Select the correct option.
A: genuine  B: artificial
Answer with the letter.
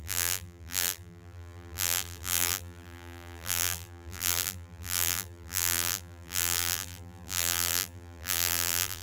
B